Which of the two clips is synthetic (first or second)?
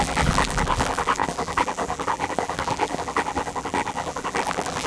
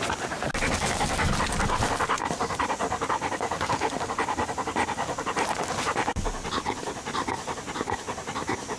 first